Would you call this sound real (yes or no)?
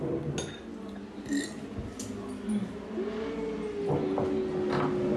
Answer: yes